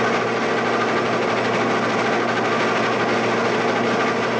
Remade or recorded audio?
recorded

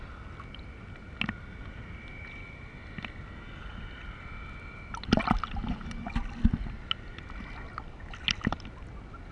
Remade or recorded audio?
recorded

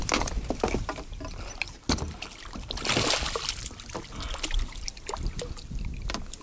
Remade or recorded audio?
recorded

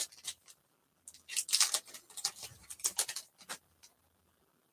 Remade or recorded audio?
recorded